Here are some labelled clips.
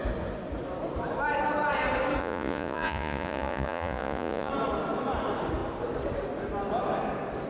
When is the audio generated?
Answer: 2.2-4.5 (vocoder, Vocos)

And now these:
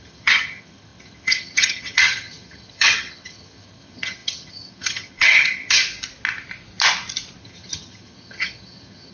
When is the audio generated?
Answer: 0.0-5.8 (vocoder, HiFi-GAN); 7.4-9.1

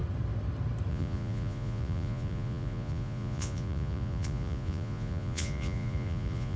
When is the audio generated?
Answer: 0.9-6.6 (vocoder, Vocos)

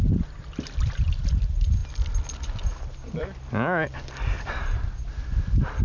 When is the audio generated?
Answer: none

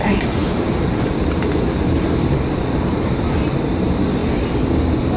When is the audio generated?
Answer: 0.0-4.2 (vocoder, BigVGAN v2)

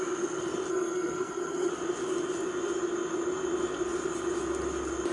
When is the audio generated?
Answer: 0.7-1.7 (codec, SNAC)

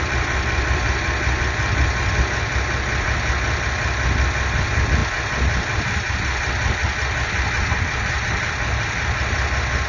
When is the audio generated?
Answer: none

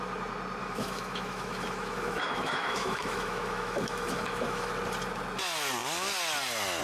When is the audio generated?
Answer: 0.6-4.7 (autoencoder, DAC-VAE)